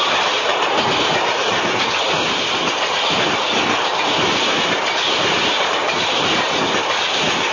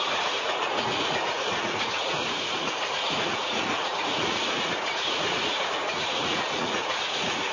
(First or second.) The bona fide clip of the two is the first